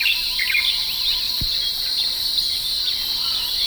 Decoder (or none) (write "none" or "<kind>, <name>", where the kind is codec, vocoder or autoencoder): none